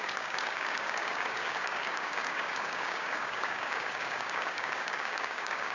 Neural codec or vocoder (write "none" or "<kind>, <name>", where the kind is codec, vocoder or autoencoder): codec, DAC